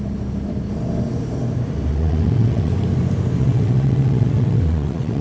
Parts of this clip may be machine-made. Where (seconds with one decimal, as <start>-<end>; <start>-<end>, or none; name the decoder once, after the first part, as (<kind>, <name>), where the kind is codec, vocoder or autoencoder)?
1.9-2.7 (vocoder, WaveNeXt); 3.4-5.2